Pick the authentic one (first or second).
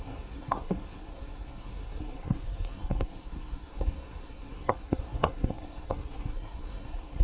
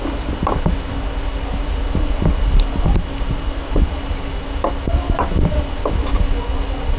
second